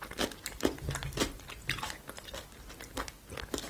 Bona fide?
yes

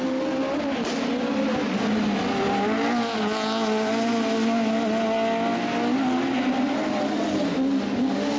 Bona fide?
yes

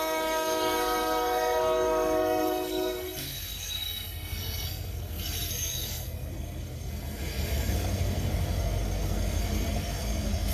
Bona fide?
no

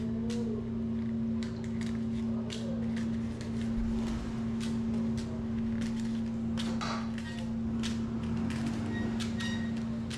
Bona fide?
yes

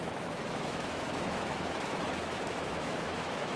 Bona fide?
no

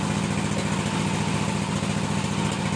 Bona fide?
yes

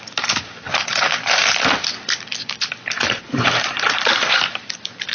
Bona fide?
yes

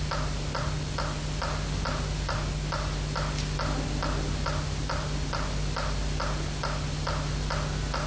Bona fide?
yes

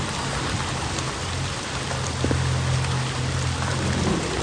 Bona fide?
yes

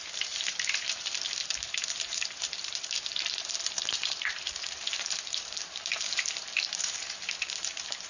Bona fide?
no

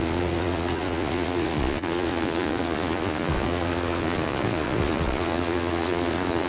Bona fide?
no